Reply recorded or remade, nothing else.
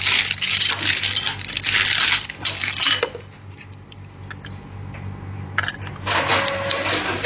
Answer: recorded